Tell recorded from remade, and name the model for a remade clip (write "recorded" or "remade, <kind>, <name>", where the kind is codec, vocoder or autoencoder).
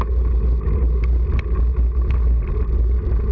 recorded